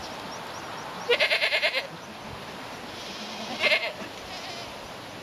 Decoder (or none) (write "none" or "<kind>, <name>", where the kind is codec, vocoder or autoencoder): none